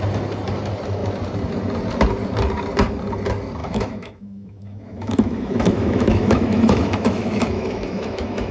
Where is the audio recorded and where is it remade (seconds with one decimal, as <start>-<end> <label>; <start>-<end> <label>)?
0.0-3.6 recorded; 3.6-8.5 remade